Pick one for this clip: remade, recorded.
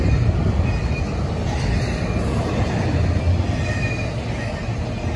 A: recorded